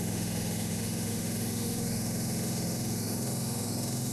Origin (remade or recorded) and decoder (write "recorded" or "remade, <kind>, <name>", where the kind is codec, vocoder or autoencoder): remade, autoencoder, DAC-VAE